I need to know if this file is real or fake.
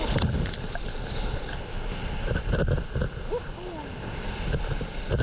real